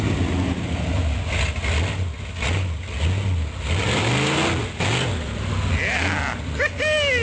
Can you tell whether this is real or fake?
real